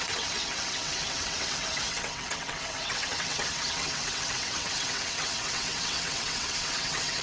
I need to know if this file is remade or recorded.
remade